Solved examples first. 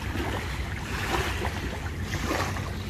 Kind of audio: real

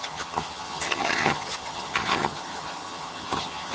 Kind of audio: fake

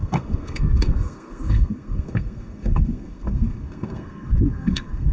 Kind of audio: fake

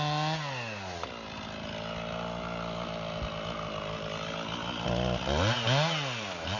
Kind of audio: real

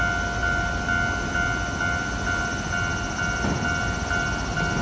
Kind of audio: real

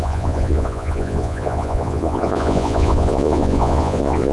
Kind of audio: fake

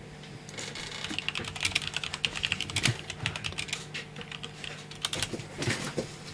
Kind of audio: real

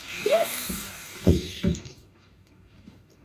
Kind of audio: fake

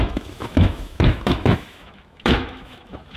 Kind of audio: fake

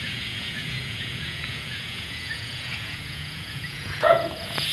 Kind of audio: fake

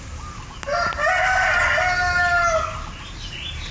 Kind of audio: real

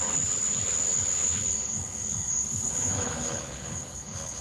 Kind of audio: fake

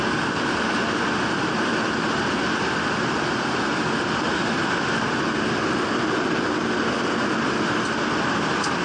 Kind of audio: real